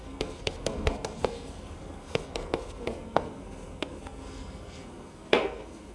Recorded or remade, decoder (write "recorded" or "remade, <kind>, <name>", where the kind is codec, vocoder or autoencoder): remade, codec, SNAC